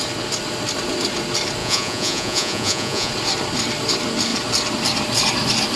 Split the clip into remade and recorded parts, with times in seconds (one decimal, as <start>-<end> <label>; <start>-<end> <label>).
0.0-1.6 recorded; 1.6-3.1 remade; 3.1-5.8 recorded